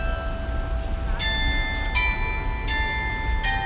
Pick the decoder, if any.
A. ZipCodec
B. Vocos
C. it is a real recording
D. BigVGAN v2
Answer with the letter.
C